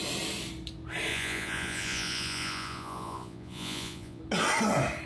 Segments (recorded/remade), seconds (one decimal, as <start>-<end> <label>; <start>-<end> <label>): 0.0-1.1 recorded; 1.1-4.2 remade; 4.2-5.1 recorded